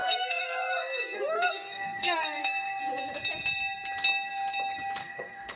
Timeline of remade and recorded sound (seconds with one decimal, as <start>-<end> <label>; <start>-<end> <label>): 0.0-2.8 remade; 2.8-5.0 recorded; 5.0-5.6 remade